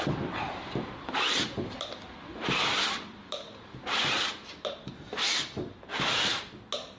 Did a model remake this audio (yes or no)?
no